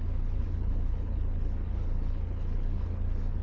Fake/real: fake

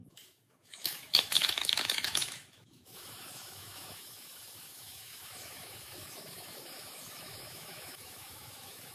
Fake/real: fake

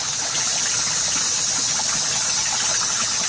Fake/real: real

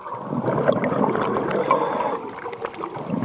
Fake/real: real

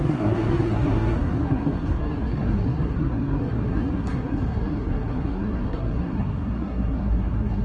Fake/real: fake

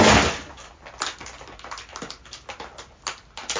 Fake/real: real